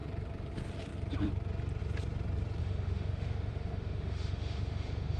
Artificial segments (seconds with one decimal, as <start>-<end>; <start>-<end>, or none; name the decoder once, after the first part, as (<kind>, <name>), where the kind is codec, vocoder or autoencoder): 2.6-5.2 (autoencoder, DAC-VAE)